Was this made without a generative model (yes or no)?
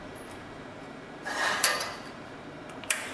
no